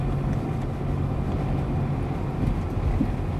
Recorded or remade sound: recorded